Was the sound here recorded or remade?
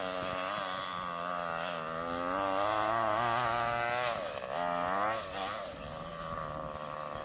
recorded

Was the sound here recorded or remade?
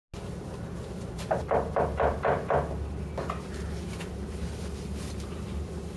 recorded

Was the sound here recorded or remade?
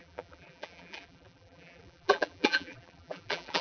remade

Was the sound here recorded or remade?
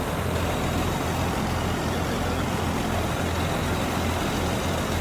recorded